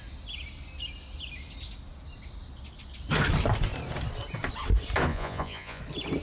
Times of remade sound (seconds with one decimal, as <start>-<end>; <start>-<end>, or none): 5.1-5.8